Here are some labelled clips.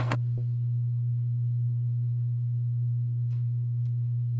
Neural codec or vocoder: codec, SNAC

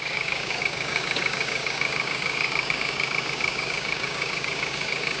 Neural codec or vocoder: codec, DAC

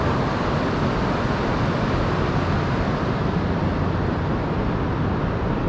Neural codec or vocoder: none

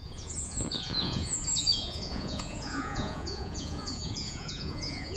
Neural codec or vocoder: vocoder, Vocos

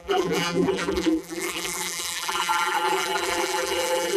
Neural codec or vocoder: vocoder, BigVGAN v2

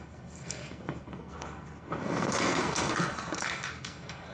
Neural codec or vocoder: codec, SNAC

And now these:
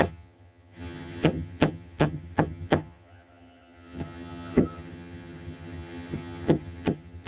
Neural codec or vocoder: vocoder, HiFi-GAN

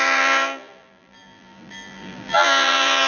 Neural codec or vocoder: vocoder, BigVGAN v2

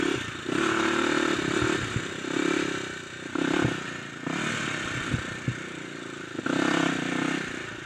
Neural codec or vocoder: none